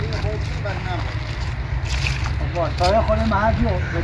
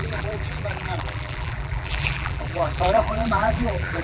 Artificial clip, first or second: second